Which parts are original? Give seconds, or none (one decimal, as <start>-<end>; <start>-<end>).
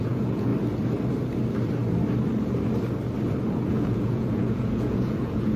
0.5-3.7